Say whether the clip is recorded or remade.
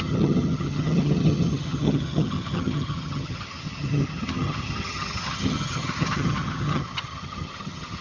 remade